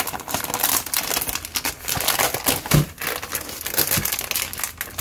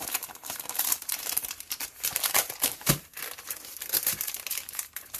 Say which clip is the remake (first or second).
second